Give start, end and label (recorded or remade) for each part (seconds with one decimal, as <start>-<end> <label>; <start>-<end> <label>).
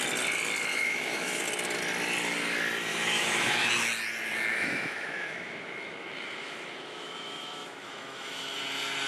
0.0-0.7 recorded; 0.7-1.4 remade; 1.4-2.9 recorded; 2.9-3.7 remade; 3.7-4.5 recorded; 4.5-8.6 remade; 8.6-9.1 recorded